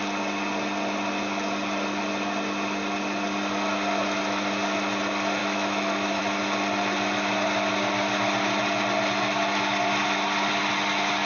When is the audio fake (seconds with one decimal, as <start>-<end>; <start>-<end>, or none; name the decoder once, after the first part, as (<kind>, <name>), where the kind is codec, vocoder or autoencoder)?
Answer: 5.4-6.2 (autoencoder, DAC-VAE)